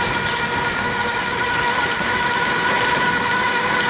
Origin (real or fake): real